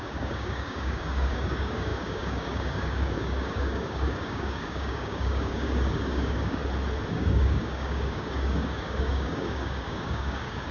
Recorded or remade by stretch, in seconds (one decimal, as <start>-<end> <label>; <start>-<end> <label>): 0.0-6.6 remade; 6.6-7.1 recorded; 7.1-10.7 remade